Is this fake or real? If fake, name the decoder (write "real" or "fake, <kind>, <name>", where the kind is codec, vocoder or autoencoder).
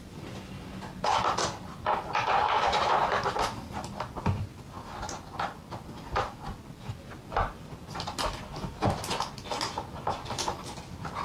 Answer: real